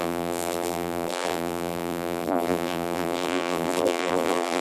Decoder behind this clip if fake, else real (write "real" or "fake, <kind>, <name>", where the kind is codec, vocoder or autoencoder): fake, vocoder, BigVGAN v2